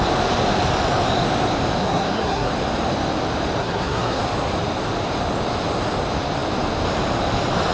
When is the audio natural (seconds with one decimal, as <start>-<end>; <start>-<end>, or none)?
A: 0.0-1.8; 2.5-3.6; 4.2-7.7